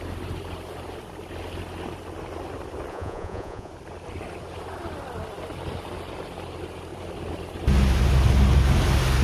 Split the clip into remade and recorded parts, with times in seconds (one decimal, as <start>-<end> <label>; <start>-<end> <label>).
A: 0.0-2.9 recorded; 2.9-3.7 remade; 3.7-9.2 recorded